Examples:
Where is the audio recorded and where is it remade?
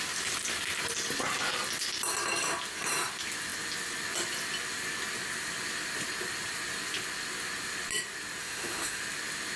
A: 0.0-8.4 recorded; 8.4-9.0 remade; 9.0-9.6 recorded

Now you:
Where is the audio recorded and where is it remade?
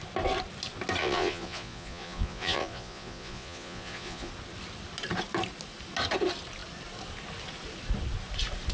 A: 0.0-1.0 recorded; 1.0-4.3 remade; 4.3-8.7 recorded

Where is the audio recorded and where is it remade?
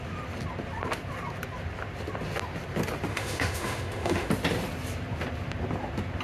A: 0.0-3.1 recorded; 3.1-4.3 remade; 4.3-6.2 recorded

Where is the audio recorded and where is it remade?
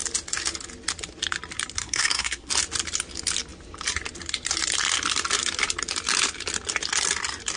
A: 0.0-1.8 recorded; 1.8-2.5 remade; 2.5-7.6 recorded